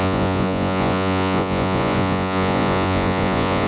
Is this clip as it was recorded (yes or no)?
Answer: no